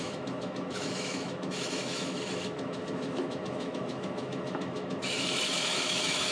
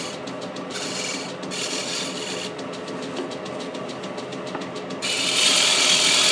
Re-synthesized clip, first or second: first